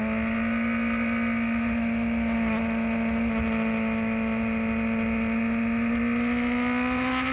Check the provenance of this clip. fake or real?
real